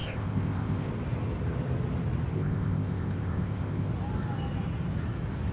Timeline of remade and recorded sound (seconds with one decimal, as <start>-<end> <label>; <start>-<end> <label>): 0.0-0.9 remade; 0.9-2.3 recorded; 2.3-3.9 remade; 3.9-5.5 recorded